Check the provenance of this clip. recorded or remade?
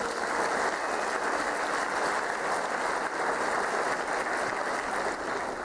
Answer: recorded